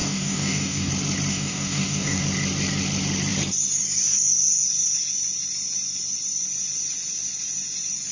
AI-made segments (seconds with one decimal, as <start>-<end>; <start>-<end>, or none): 0.0-0.9; 1.3-2.2